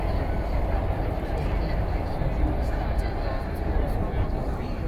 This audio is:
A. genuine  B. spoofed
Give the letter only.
A